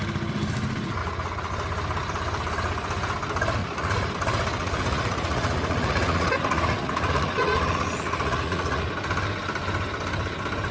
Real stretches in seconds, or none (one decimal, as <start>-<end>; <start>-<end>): 0.0-1.0; 1.5-3.6; 4.1-4.6; 8.9-10.7